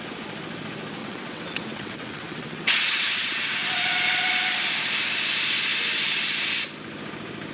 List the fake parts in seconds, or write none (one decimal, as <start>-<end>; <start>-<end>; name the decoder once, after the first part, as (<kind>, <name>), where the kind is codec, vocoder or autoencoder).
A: 1.0-3.6 (vocoder, WaveNeXt)